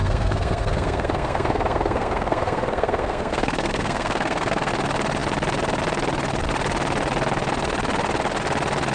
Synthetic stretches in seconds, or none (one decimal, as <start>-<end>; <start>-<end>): 0.0-4.7